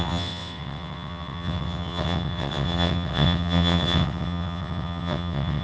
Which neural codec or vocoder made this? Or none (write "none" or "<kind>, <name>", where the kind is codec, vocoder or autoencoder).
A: vocoder, WaveNeXt